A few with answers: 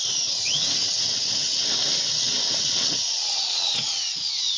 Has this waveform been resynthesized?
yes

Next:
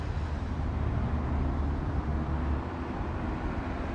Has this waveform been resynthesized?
no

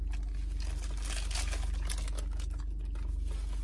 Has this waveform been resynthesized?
no